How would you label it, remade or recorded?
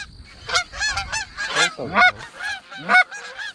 recorded